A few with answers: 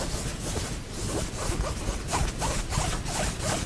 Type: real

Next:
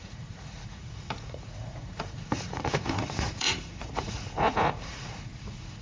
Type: fake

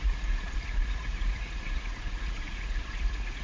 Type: fake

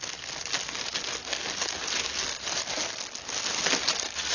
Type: real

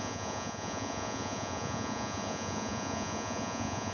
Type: fake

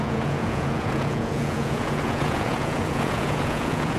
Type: fake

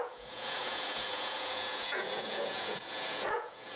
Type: fake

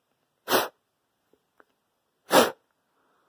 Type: real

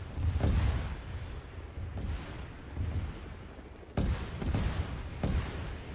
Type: real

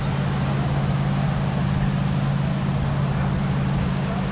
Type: real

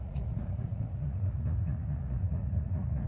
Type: fake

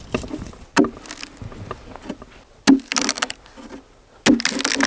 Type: real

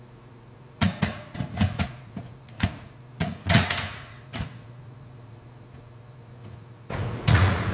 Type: fake